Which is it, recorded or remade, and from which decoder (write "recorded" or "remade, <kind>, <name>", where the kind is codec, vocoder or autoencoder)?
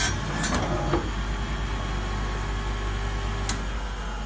recorded